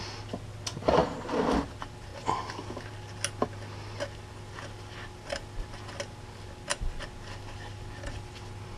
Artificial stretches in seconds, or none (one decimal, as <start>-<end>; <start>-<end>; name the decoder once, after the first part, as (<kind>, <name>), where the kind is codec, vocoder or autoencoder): none